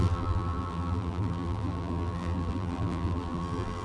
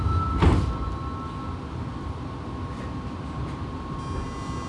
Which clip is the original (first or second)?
second